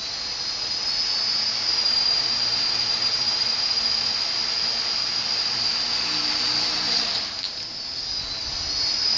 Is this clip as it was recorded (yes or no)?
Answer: yes